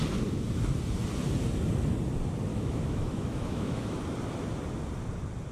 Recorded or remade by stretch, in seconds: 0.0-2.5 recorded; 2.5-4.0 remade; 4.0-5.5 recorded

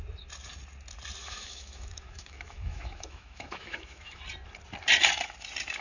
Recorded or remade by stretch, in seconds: 0.0-1.2 recorded; 1.2-4.2 remade; 4.2-5.8 recorded